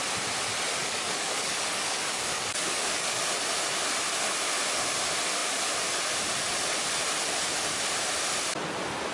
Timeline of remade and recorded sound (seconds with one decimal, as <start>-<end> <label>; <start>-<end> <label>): 0.0-0.8 recorded; 0.8-3.2 remade; 3.2-9.1 recorded